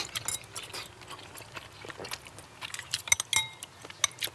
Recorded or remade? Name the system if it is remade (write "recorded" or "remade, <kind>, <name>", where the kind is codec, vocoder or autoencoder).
recorded